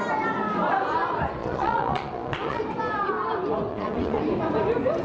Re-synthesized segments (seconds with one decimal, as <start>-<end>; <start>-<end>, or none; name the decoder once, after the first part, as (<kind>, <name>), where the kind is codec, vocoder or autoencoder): 1.4-2.6 (vocoder, Vocos); 3.7-4.2